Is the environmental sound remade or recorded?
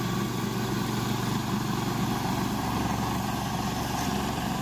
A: recorded